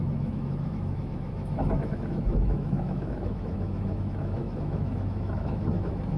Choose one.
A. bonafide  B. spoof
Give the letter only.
B